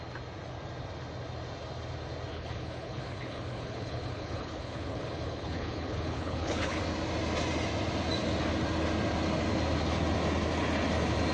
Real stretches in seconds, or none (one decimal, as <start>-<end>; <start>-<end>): 0.0-2.3; 6.8-11.3